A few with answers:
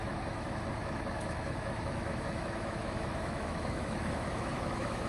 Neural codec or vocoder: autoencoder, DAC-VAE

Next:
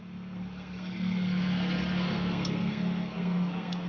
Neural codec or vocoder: codec, SNAC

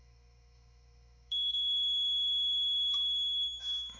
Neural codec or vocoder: autoencoder, DAC-VAE